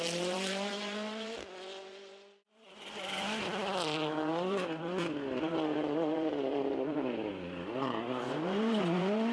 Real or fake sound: fake